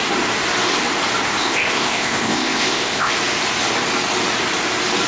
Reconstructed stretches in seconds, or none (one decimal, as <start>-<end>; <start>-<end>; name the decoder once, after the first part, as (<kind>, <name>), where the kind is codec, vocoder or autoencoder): 1.4-3.1 (codec, ZipCodec)